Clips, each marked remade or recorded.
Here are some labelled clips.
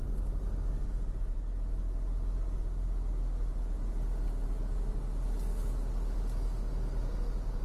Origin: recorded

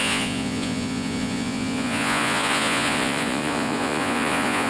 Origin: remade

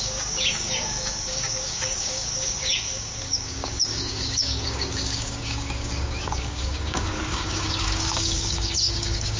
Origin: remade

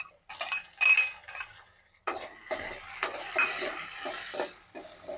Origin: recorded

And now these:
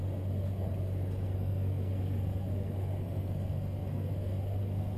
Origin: remade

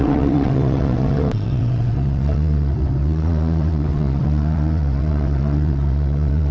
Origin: remade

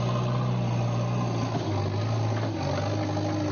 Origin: recorded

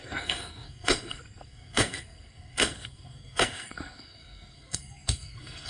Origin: remade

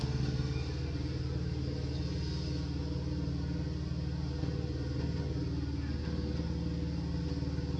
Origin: recorded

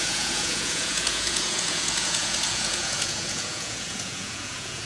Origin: remade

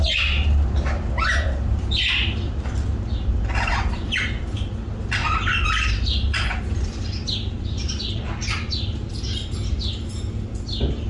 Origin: remade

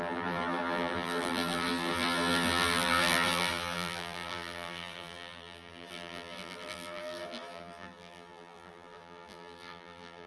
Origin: remade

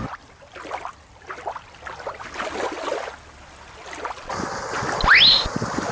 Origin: recorded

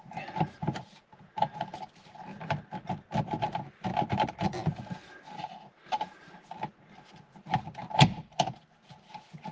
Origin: recorded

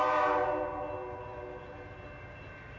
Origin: recorded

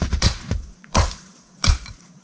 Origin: remade